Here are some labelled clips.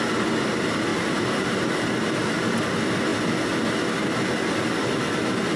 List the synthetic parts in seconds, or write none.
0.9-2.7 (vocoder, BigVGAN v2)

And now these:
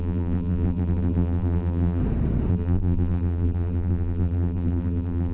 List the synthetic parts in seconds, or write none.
0.0-2.0 (vocoder, BigVGAN v2); 2.5-5.3

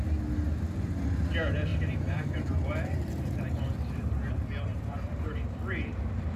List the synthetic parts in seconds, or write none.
1.7-4.3 (vocoder, BigVGAN v2); 4.7-5.6

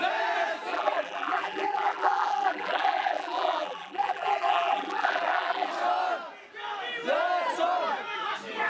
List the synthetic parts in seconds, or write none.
0.7-5.7 (vocoder, BigVGAN v2)

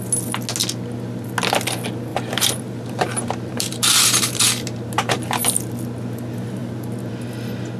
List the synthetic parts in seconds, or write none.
2.1-5.4 (vocoder, BigVGAN v2)